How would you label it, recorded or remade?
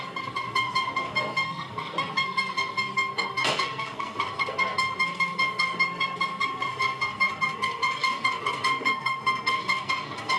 remade